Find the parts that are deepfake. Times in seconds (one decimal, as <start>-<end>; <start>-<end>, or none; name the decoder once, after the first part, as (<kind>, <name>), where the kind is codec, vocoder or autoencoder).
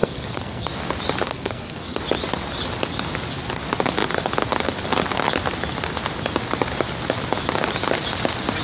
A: 0.0-0.7 (codec, SNAC); 1.3-2.0